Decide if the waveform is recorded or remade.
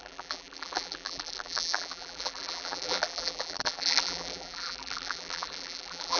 remade